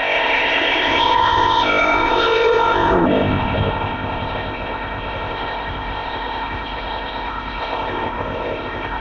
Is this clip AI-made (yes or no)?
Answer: yes